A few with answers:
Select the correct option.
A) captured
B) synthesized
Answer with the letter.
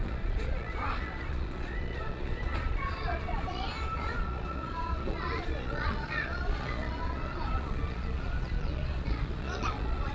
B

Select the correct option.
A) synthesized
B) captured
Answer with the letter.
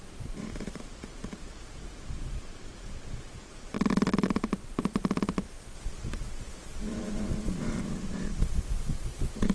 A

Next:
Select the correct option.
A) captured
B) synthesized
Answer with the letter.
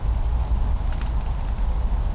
A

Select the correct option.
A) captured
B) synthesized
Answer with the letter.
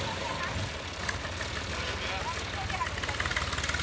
A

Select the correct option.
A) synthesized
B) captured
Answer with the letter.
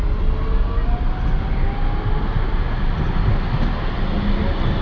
B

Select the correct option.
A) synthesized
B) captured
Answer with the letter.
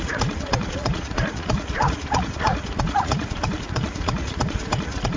A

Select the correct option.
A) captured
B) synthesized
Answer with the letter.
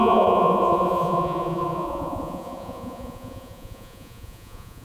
B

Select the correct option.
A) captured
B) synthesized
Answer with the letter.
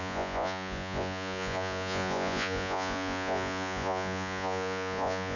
B